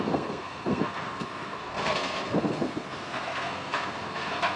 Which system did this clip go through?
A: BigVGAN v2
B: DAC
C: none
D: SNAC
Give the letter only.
D